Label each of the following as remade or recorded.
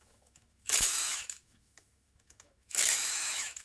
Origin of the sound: remade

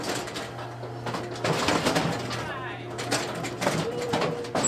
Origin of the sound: recorded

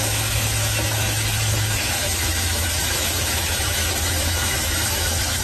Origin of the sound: remade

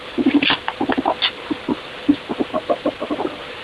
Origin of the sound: recorded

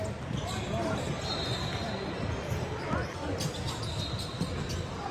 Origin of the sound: recorded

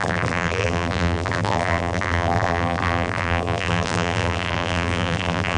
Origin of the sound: remade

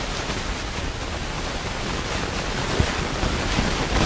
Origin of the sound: recorded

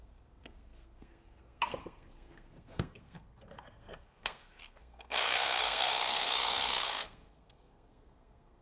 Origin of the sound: remade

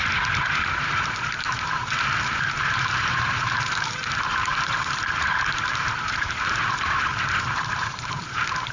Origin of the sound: remade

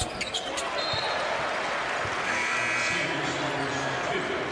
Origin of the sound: recorded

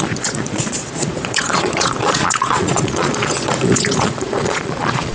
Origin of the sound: remade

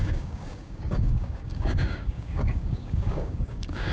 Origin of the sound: remade